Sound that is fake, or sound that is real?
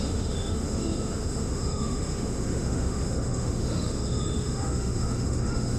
fake